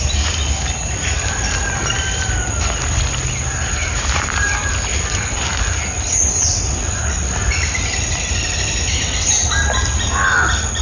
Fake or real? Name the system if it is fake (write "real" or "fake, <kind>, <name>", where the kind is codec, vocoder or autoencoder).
real